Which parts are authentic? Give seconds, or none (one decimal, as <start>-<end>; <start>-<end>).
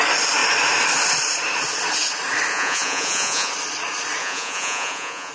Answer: 0.0-2.5; 3.5-4.2